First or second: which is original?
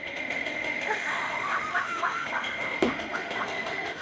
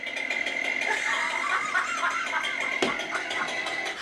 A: second